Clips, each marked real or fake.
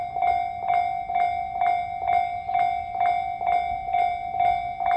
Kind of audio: real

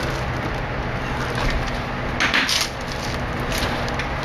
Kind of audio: real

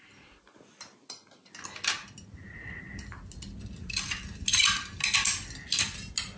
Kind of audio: real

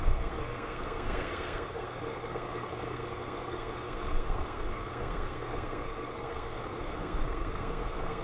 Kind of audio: fake